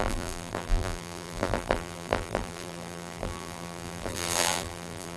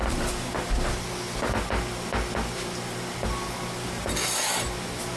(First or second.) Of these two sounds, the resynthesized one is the first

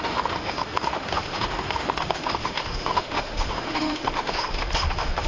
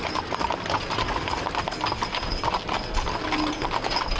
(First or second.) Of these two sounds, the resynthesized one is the first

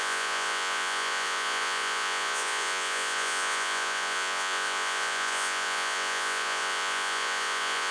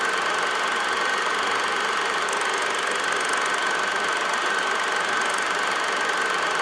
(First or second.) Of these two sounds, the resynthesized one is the first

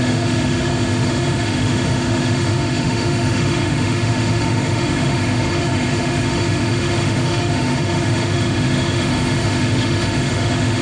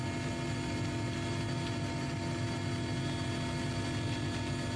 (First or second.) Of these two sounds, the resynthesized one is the first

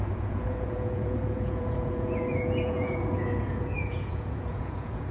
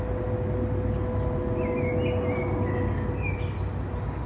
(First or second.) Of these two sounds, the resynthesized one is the first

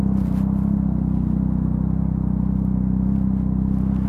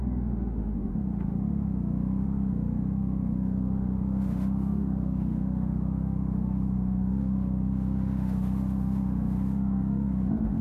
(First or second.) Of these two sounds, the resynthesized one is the second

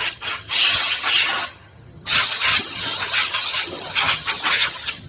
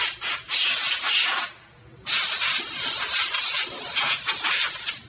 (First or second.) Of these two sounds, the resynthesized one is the first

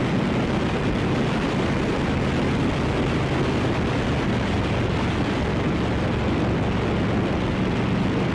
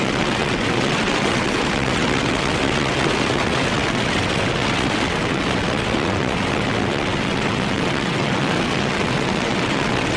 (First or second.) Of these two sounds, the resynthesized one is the second